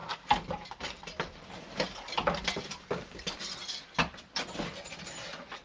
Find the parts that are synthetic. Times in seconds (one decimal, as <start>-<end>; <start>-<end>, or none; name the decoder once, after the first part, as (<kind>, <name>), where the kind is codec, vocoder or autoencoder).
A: 0.0-3.4 (vocoder, BigVGAN v2)